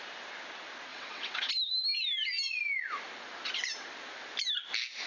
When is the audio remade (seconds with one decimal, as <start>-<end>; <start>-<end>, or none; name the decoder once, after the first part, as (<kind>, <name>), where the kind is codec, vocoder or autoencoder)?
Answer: 0.9-1.5 (vocoder, WaveNeXt)